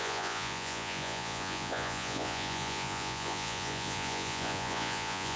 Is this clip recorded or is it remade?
remade